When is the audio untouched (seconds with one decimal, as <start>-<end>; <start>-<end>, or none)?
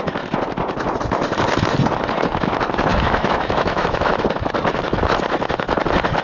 0.0-2.9; 4.0-6.2